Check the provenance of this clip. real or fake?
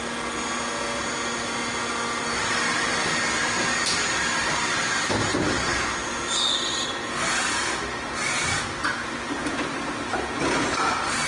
real